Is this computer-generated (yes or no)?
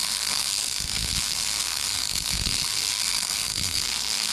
yes